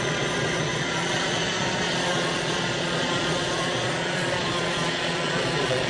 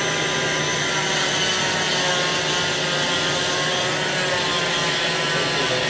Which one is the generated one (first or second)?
first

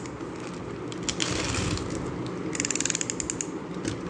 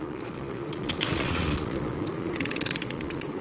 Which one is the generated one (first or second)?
second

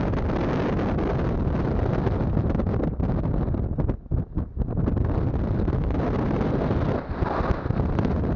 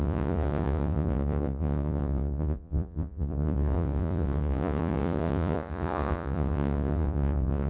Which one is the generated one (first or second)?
second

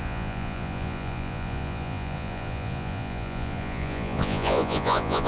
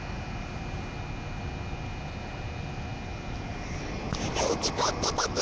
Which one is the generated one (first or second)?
first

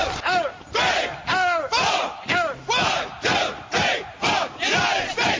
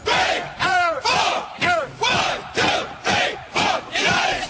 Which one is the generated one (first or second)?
second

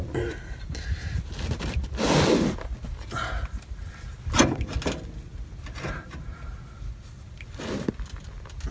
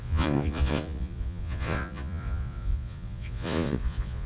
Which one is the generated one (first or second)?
second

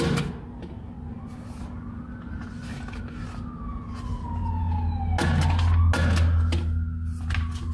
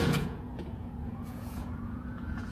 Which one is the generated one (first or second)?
second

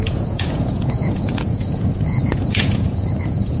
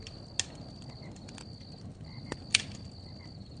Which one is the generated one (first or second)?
first